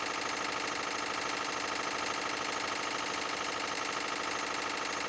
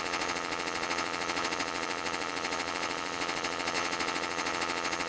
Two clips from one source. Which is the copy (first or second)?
second